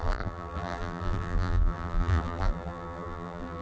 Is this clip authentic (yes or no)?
no